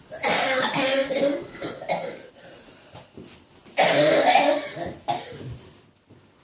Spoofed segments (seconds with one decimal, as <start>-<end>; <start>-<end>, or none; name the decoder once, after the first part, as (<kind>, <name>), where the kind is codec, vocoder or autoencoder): none